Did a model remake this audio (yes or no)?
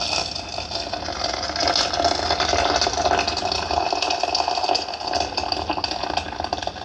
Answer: no